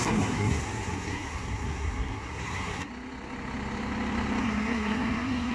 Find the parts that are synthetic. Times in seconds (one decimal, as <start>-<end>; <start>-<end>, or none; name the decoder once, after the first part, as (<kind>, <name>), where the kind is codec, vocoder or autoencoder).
0.0-2.9 (codec, SNAC); 4.4-5.5